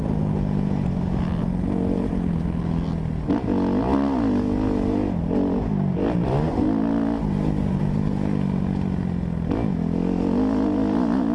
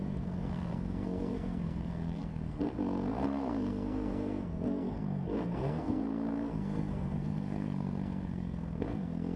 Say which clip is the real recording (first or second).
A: first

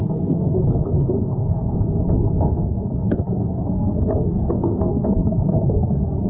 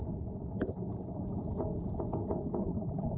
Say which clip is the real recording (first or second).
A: second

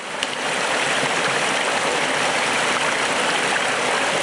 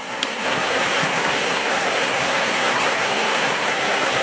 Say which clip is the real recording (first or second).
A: first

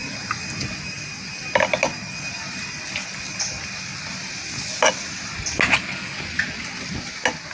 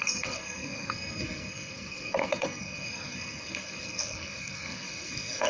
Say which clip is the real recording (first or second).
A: first